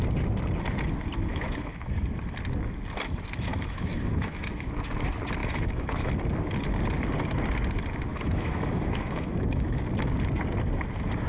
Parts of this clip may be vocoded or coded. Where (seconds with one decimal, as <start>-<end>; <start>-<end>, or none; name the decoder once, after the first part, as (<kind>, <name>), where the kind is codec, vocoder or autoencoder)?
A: 1.3-2.0 (autoencoder, DAC-VAE); 3.5-4.7; 5.4-6.1; 8.1-9.8